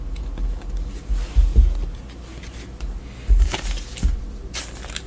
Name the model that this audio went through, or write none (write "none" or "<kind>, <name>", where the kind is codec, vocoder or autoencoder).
none